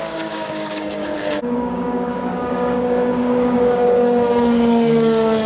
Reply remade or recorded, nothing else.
remade